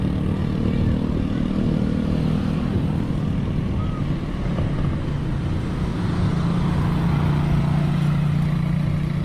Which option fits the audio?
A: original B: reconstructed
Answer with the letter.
A